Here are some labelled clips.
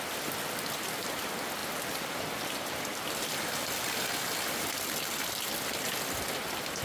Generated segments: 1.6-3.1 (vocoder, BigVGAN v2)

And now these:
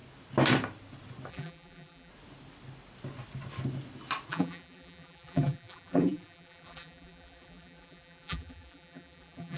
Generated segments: 1.3-2.1 (vocoder, BigVGAN v2); 4.3-9.6

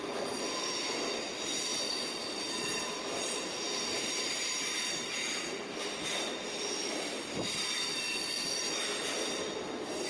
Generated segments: 1.7-5.9 (vocoder, BigVGAN v2)

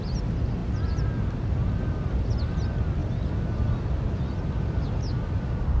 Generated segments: 3.0-4.2 (vocoder, BigVGAN v2)

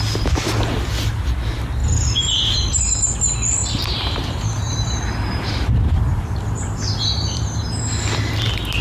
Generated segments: 1.8-2.8 (vocoder, BigVGAN v2); 3.6-7.8

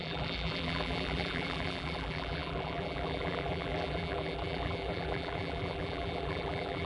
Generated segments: 0.0-6.9 (vocoder, BigVGAN v2)